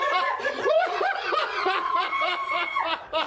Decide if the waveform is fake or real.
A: fake